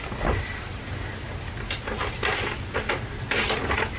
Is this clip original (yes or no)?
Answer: yes